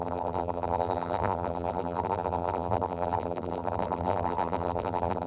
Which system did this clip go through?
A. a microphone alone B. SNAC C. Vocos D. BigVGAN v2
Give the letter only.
D